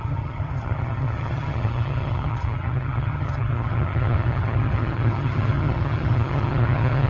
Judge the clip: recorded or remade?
remade